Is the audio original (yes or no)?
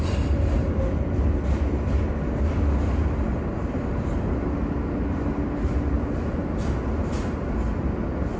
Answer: yes